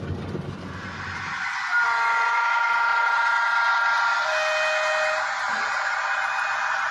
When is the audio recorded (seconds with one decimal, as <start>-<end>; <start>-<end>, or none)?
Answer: 0.0-6.9